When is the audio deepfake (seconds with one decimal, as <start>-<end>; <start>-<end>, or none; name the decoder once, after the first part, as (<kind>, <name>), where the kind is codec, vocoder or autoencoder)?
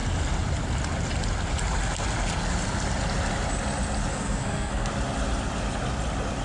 4.1-4.9 (codec, SNAC)